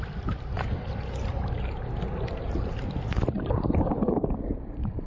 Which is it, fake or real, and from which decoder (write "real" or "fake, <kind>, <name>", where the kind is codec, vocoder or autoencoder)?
fake, vocoder, BigVGAN v2